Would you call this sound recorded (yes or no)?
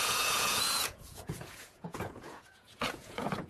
no